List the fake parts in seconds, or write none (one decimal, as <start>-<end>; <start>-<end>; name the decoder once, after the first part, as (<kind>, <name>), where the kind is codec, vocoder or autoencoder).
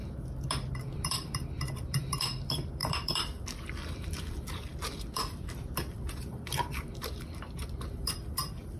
0.7-8.8 (vocoder, BigVGAN v2)